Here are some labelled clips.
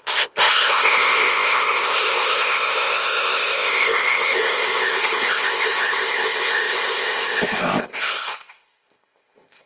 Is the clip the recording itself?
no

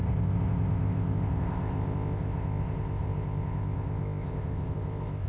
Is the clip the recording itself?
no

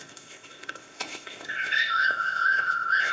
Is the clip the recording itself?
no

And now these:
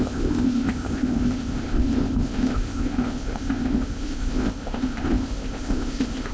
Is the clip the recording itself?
no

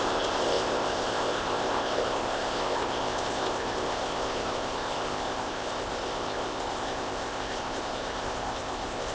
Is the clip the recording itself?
no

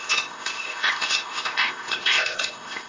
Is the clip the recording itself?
no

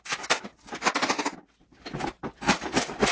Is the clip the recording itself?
yes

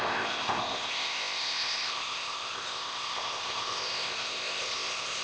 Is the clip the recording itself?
no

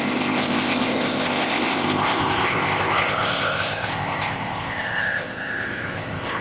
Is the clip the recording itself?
no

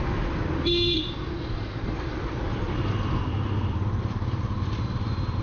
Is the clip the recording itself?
yes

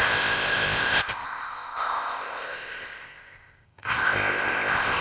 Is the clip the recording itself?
no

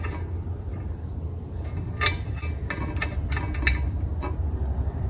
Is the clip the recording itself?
yes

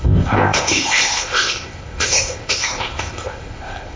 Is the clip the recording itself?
no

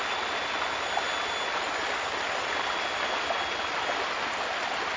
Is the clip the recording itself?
yes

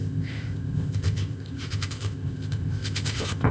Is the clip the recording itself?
no